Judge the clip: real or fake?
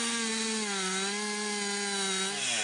real